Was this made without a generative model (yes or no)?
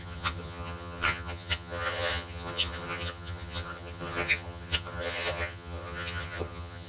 no